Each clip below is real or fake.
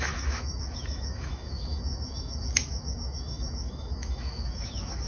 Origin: fake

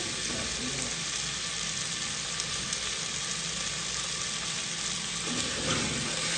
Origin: real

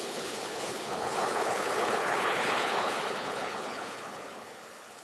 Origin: fake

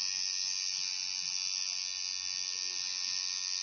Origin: real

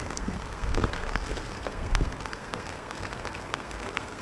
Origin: fake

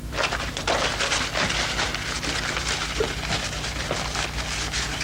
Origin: real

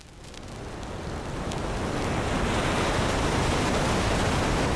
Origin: real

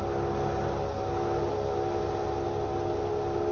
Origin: real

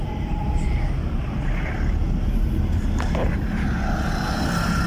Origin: real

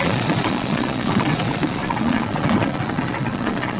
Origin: fake